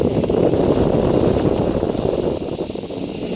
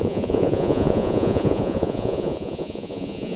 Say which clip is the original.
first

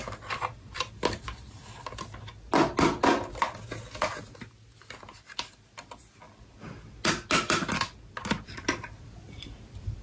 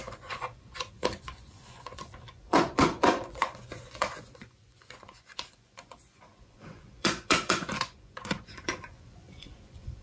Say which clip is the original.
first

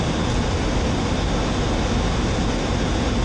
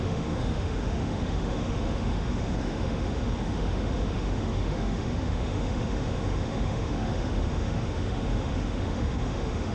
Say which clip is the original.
first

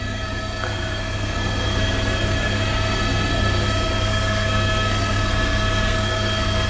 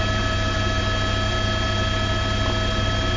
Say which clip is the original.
second